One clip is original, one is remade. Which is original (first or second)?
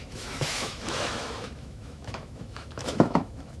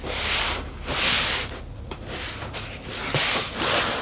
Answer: second